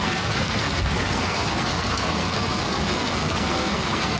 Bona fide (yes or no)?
no